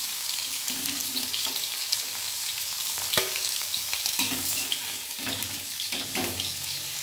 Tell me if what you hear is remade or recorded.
remade